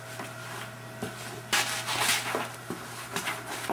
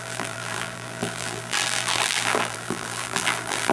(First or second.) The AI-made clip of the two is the second